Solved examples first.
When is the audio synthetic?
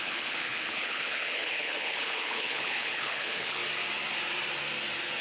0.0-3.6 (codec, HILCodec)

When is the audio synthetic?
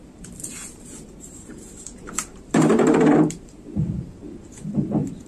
0.0-5.3 (vocoder, BigVGAN v2)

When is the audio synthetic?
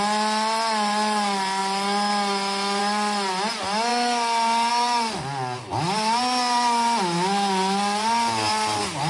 none